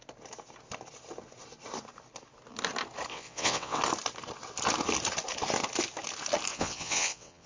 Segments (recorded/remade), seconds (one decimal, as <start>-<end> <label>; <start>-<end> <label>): 0.0-3.1 recorded; 3.1-3.8 remade; 3.8-6.5 recorded; 6.5-7.5 remade